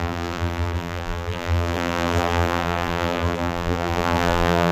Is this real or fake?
fake